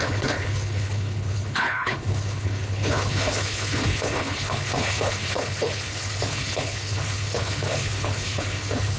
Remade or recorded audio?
remade